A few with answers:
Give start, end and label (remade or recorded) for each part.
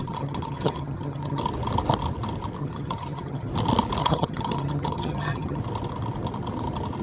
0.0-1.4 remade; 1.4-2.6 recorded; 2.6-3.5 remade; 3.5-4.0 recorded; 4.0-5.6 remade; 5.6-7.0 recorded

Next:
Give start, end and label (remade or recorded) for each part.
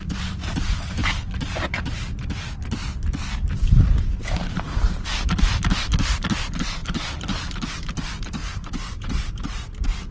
0.0-1.0 remade; 1.0-4.2 recorded; 4.2-10.1 remade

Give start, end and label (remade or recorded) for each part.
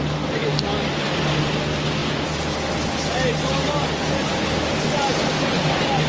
0.0-6.1 recorded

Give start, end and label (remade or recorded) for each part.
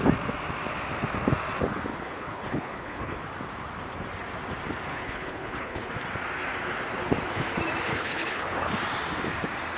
0.0-1.9 recorded; 1.9-3.2 remade; 3.2-4.9 recorded; 4.9-5.9 remade; 5.9-7.9 recorded; 7.9-8.7 remade; 8.7-9.8 recorded